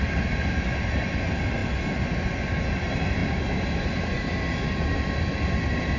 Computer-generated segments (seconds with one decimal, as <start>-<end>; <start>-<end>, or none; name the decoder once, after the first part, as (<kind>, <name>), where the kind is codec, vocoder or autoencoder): none